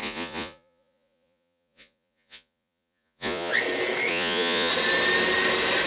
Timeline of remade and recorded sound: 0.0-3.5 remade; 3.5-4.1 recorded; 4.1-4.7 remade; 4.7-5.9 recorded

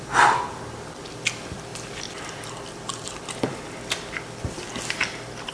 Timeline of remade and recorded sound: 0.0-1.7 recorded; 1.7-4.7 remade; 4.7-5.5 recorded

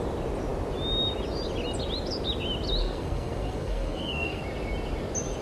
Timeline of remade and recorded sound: 0.0-2.8 recorded; 2.8-4.4 remade; 4.4-5.4 recorded